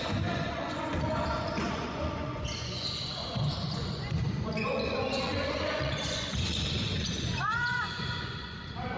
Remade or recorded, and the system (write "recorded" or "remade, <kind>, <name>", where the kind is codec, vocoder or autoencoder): remade, vocoder, Vocos